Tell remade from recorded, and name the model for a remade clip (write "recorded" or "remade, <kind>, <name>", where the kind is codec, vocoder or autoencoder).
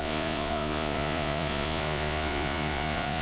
remade, vocoder, Vocos